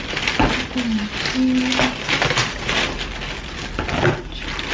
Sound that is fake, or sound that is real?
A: real